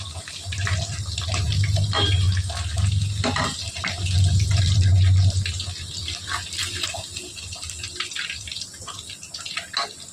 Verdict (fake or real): real